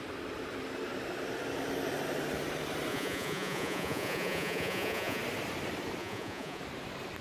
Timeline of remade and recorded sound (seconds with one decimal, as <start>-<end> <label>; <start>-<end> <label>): 0.0-2.9 recorded; 2.9-5.2 remade; 5.2-6.0 recorded; 6.0-6.6 remade; 6.6-7.2 recorded